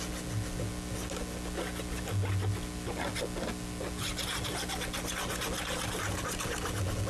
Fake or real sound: real